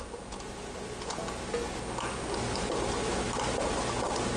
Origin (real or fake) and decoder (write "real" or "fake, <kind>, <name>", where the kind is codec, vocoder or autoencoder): real